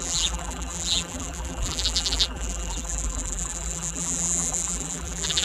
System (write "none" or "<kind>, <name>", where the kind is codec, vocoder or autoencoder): vocoder, BigVGAN v2